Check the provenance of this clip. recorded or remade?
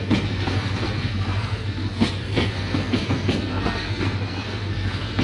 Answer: remade